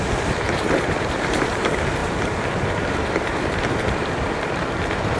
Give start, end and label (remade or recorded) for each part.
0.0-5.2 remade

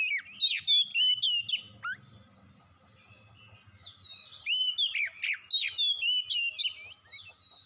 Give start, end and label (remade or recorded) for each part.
0.0-7.7 recorded